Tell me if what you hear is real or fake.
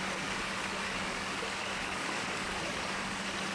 fake